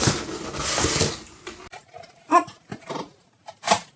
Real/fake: real